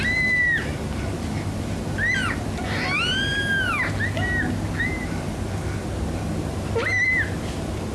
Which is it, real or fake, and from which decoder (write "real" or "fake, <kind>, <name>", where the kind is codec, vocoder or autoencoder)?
real